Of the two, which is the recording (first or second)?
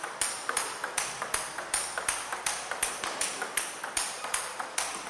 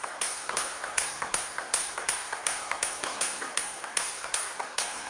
first